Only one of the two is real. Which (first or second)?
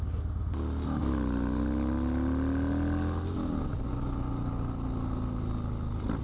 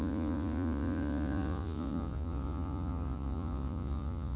first